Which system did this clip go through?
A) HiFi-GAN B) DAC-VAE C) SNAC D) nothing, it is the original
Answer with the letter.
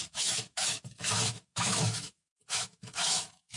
B